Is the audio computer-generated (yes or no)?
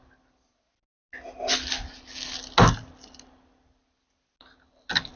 no